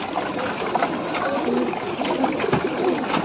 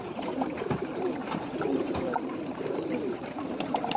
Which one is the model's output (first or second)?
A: second